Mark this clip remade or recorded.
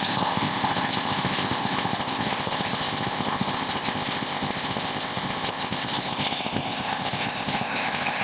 remade